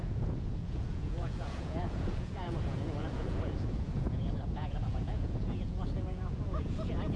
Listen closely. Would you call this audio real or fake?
fake